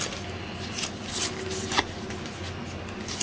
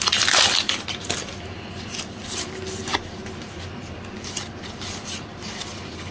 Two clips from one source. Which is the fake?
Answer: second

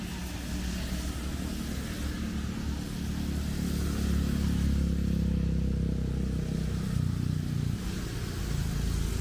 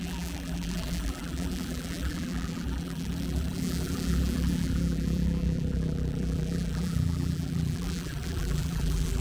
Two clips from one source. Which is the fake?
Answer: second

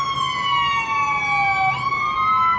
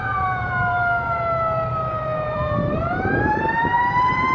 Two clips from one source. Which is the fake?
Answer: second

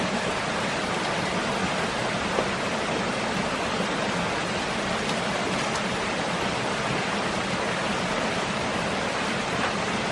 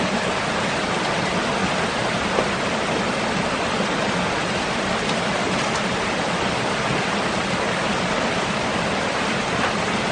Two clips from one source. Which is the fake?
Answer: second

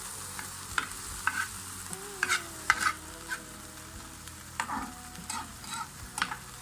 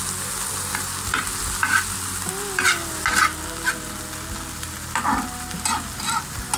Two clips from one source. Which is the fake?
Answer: first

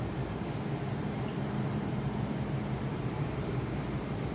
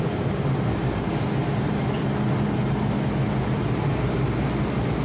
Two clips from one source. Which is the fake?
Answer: first